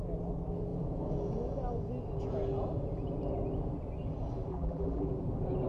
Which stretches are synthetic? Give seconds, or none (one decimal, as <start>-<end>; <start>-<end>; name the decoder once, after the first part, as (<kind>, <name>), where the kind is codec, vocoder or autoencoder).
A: 4.5-5.1 (vocoder, BigVGAN v2)